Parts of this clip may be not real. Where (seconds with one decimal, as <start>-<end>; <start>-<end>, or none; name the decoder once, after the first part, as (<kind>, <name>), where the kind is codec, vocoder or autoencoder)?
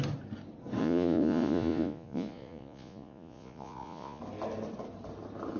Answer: 0.8-4.2 (vocoder, Vocos)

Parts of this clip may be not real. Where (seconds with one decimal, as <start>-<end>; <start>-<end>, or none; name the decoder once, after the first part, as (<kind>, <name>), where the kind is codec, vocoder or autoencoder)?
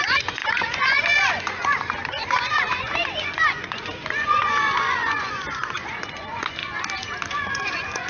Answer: 0.0-6.6 (vocoder, Vocos); 7.3-8.1